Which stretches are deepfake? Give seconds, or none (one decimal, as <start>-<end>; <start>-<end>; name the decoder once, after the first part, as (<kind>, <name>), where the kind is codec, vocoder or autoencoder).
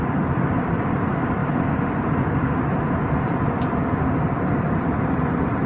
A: none